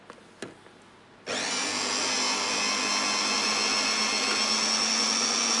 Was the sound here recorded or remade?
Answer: recorded